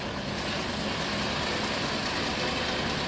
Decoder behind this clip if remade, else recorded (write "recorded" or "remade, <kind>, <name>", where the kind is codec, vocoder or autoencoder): recorded